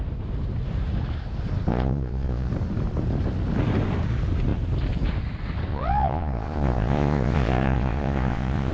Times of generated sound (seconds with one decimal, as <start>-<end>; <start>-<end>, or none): 1.7-2.5; 5.7-8.7